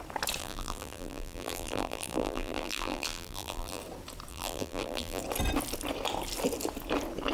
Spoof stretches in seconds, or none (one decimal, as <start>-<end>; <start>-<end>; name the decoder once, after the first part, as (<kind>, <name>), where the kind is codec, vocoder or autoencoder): 0.4-3.8 (vocoder, BigVGAN v2); 4.3-5.2